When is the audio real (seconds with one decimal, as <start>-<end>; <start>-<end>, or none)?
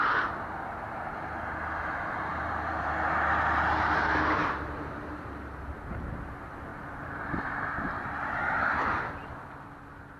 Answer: 0.0-2.3; 2.8-4.4; 6.2-6.7; 8.0-10.2